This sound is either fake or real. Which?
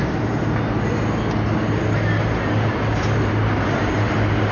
real